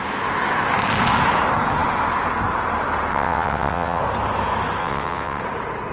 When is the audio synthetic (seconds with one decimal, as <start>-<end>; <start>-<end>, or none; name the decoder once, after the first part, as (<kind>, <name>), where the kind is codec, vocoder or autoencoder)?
3.1-4.0 (vocoder, WaveNeXt); 4.8-5.4